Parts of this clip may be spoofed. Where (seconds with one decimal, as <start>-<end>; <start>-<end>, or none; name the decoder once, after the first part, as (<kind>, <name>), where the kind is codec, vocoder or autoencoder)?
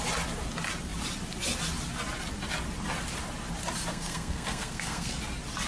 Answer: 3.9-5.2 (codec, SNAC)